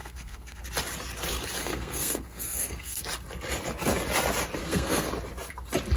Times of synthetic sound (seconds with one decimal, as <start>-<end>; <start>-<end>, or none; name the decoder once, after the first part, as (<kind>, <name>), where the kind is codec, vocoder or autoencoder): 0.0-0.6 (codec, SNAC); 1.6-3.0; 4.6-5.1